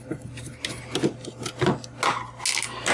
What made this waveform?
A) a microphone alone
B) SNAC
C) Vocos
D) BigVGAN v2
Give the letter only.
A